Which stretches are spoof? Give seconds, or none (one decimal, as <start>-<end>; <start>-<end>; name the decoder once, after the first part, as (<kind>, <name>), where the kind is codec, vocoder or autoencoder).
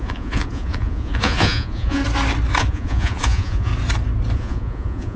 0.0-2.0 (vocoder, Vocos); 2.6-3.7; 4.3-5.2